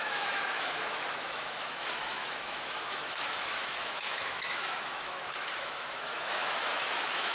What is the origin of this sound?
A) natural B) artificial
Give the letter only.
B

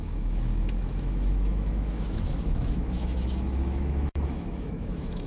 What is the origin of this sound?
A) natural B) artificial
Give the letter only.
B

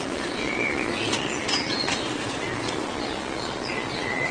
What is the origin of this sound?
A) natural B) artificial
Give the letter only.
B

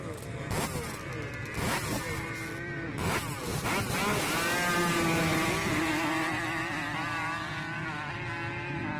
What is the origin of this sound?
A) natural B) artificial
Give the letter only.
A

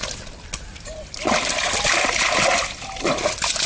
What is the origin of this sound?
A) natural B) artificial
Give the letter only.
A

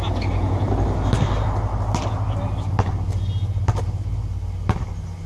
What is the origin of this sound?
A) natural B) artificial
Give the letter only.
A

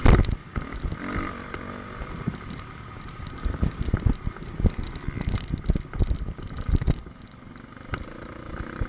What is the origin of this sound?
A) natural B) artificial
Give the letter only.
B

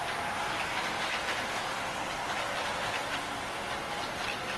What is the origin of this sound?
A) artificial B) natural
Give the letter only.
B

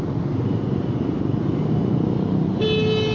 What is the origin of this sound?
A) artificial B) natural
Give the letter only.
B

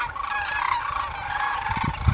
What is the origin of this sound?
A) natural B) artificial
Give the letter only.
A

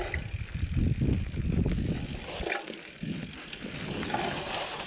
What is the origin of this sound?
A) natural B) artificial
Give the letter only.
A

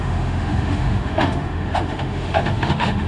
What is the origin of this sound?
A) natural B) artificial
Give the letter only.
B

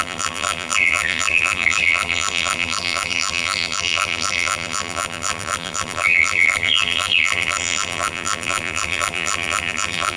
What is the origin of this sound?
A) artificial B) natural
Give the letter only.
A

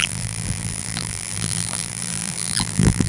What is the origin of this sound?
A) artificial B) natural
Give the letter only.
A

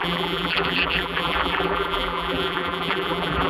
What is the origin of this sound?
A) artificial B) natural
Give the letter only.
A